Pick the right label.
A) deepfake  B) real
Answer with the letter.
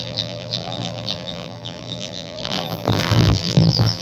A